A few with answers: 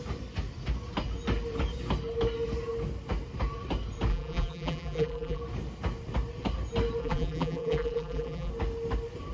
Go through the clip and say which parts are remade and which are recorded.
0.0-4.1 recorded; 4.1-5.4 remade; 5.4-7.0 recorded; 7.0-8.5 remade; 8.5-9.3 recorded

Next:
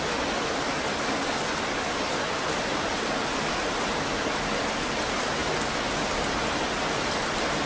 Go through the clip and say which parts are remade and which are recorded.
0.0-7.7 recorded

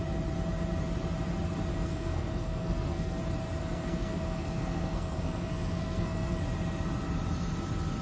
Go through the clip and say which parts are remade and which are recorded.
0.0-1.7 recorded; 1.7-3.2 remade; 3.2-3.6 recorded; 3.6-6.4 remade; 6.4-8.0 recorded